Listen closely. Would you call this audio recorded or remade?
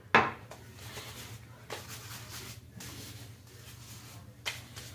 recorded